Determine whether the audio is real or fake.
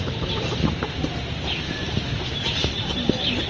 real